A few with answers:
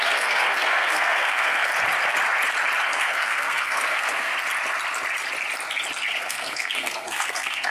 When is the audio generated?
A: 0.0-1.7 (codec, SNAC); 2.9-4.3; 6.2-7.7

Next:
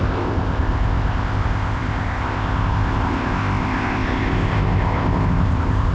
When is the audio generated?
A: 0.0-5.9 (codec, ZipCodec)

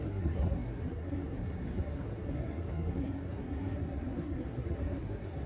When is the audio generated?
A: 0.0-5.5 (codec, SNAC)

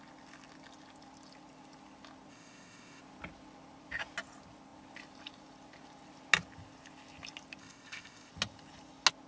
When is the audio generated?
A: 2.3-3.0 (codec, ZipCodec); 7.6-8.3

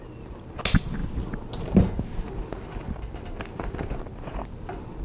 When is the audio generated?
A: none